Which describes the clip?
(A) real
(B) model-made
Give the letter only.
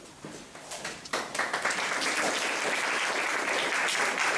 A